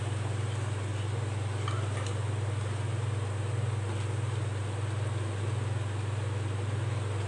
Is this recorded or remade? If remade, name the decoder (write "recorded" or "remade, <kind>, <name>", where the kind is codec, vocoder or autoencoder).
recorded